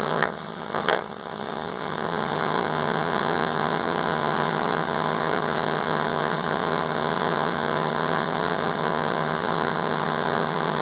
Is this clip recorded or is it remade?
remade